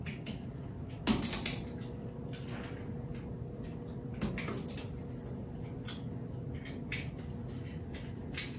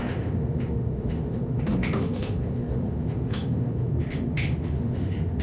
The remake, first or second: second